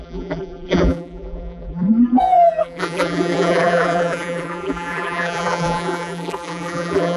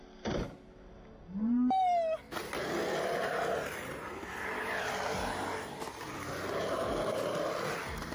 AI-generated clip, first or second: first